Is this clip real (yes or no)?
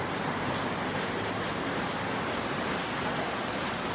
yes